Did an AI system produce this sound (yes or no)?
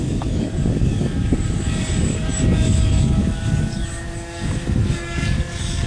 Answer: yes